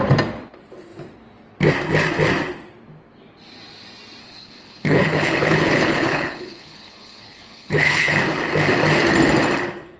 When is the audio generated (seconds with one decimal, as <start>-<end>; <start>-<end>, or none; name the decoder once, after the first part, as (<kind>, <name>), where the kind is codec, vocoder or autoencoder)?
4.2-8.2 (codec, HILCodec)